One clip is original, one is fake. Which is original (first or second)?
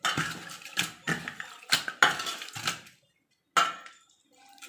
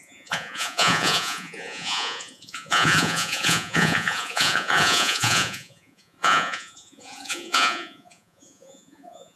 first